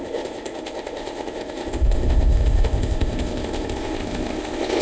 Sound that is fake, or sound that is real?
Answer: fake